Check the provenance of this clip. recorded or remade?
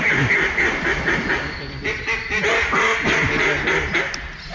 recorded